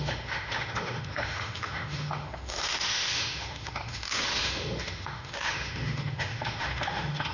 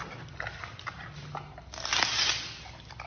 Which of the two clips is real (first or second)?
second